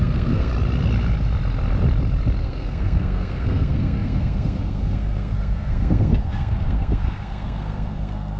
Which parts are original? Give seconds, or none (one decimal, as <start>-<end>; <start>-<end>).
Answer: 0.5-2.4